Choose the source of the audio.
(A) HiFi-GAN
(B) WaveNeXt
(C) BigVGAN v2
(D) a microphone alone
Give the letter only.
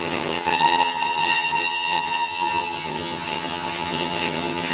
A